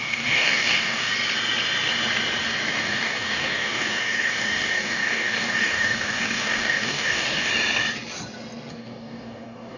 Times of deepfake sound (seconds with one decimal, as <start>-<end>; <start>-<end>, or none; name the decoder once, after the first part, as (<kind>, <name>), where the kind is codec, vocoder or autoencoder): 0.0-1.1 (codec, DAC); 2.8-7.5; 8.7-9.8